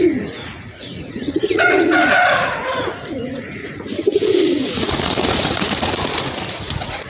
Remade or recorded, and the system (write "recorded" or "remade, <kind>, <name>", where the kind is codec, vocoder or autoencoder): remade, vocoder, Vocos